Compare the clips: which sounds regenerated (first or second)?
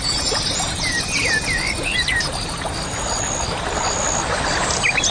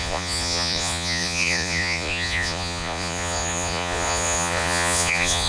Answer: second